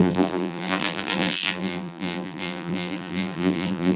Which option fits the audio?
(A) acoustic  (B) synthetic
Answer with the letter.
B